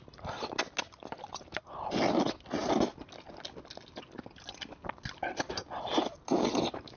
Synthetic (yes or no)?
no